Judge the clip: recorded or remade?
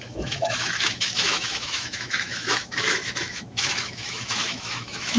remade